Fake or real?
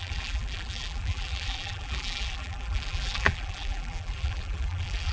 fake